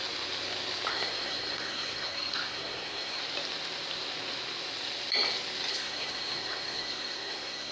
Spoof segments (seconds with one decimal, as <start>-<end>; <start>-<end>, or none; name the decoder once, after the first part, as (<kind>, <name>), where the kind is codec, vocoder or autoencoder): 0.9-3.2 (codec, SNAC); 5.7-7.7

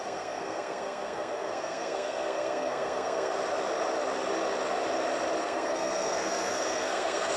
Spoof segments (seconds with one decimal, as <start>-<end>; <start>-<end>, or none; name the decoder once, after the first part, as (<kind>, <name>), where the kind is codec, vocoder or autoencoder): 0.0-3.3 (codec, SNAC); 5.4-7.4